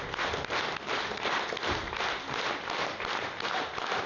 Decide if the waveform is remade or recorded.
recorded